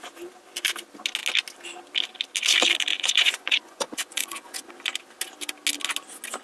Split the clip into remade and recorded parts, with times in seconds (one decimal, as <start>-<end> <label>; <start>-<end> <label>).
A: 0.0-2.9 recorded; 2.9-4.7 remade; 4.7-6.4 recorded